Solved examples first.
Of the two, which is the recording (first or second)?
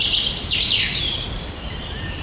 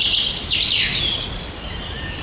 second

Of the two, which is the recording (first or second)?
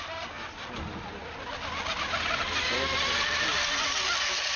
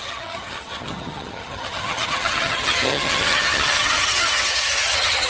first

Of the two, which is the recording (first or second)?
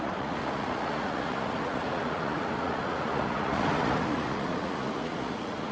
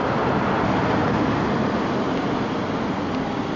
second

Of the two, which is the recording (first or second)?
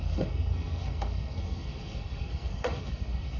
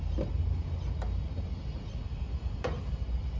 second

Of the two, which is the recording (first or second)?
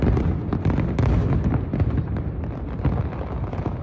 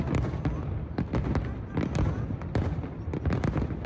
first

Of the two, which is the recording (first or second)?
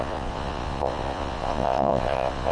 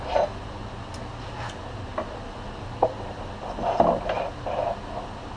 second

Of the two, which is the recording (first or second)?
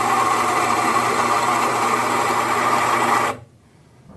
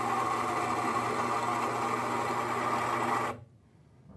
second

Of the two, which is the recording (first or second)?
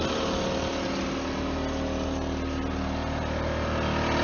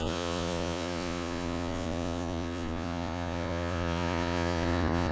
first